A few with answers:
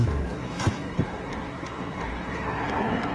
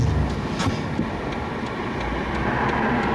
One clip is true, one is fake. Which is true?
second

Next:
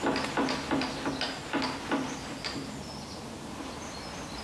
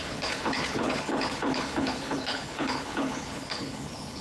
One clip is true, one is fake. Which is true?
first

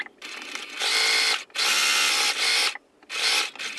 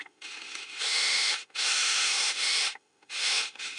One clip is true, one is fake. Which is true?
first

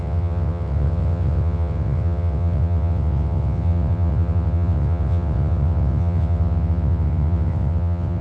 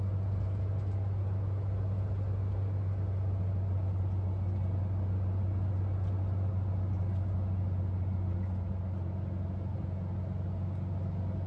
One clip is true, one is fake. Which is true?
second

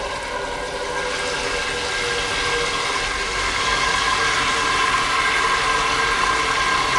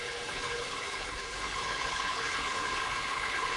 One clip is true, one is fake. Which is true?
first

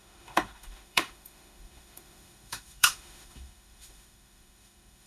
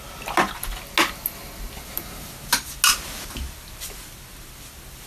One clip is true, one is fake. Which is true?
second